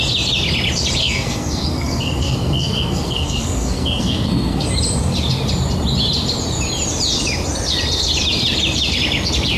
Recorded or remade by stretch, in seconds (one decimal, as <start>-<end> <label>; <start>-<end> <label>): 0.0-1.0 recorded; 1.0-4.7 remade; 4.7-9.6 recorded